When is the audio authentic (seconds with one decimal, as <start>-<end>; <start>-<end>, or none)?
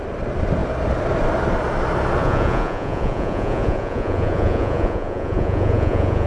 0.0-2.2